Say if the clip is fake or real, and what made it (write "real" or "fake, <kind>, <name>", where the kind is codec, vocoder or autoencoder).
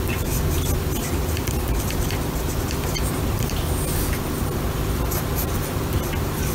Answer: real